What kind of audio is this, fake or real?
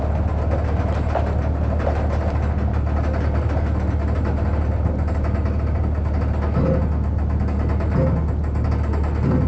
real